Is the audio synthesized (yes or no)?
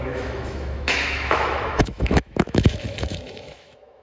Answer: yes